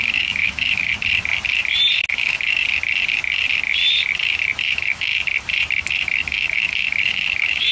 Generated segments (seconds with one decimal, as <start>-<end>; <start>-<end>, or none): 0.0-0.9; 2.1-2.6; 4.6-5.1; 5.8-7.7